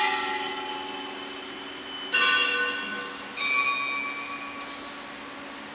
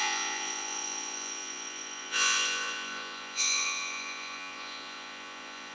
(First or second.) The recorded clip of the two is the first